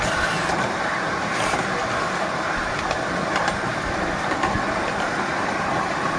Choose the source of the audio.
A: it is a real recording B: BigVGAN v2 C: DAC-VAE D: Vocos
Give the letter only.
A